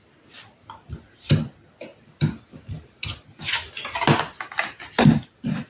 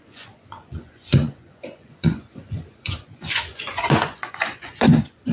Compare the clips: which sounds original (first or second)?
first